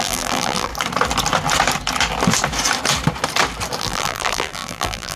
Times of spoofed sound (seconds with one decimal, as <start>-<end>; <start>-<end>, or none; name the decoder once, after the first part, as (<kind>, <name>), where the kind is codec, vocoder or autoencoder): 0.0-0.7 (vocoder, BigVGAN v2); 3.8-5.2